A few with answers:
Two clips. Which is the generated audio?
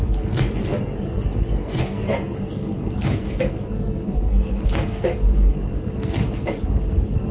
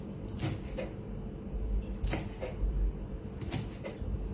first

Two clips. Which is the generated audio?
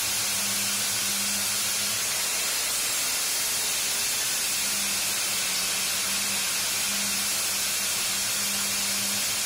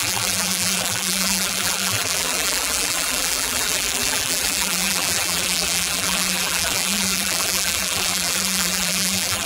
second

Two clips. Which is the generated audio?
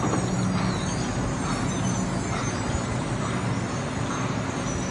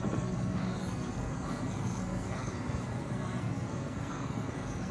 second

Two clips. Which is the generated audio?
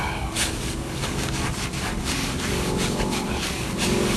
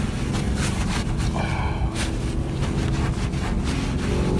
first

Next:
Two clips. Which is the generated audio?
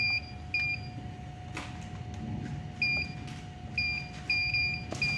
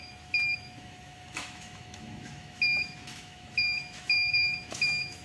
second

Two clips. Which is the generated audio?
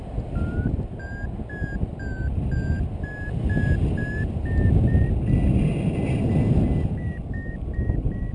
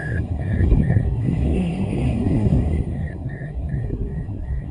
second